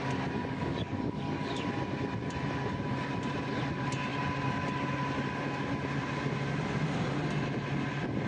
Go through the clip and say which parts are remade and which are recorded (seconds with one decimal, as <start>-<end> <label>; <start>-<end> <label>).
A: 0.0-0.4 recorded; 0.4-1.5 remade; 1.5-8.3 recorded